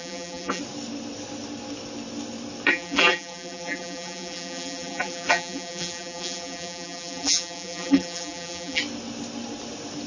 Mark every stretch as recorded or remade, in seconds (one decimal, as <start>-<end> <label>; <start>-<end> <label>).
0.0-0.6 remade; 0.6-2.7 recorded; 2.7-8.8 remade; 8.8-10.1 recorded